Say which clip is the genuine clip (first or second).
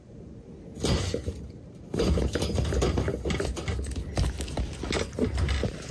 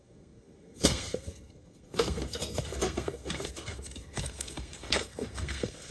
first